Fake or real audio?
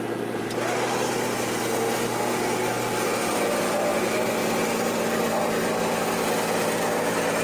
real